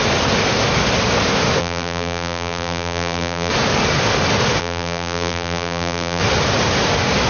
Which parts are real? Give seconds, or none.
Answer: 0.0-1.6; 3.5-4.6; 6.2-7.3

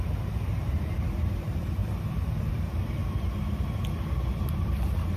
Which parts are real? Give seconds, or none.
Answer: 1.8-2.5; 3.0-4.4

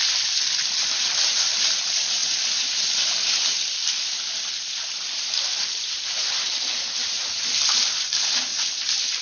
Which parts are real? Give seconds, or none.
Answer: none